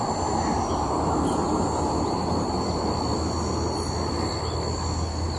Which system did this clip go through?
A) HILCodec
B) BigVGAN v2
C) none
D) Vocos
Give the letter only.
C